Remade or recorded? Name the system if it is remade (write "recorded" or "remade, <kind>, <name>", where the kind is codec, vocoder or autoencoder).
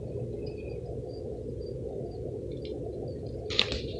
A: recorded